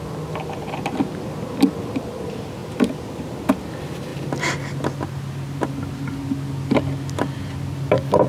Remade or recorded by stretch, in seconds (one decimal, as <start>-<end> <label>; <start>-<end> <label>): 0.0-8.3 recorded